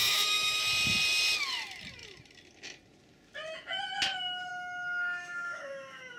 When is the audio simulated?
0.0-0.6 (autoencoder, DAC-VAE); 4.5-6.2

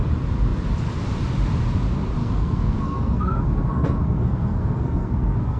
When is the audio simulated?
2.2-5.6 (codec, SNAC)